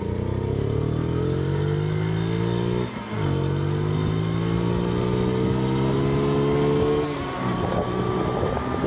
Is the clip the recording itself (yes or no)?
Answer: yes